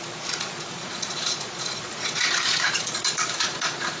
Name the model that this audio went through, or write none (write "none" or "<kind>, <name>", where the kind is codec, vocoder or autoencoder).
vocoder, Vocos